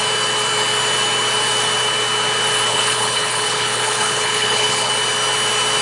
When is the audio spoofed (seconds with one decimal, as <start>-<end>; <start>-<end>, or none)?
2.7-4.9